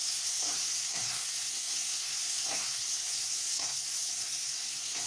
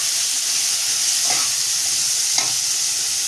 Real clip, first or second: second